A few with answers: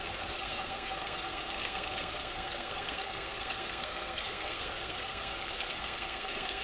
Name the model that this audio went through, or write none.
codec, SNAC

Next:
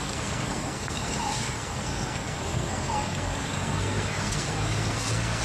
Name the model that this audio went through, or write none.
codec, SNAC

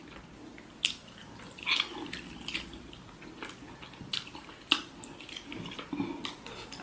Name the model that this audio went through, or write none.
none